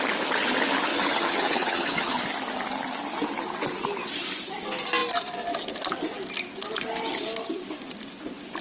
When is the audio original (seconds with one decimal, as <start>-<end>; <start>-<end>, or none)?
0.0-0.9; 2.2-8.6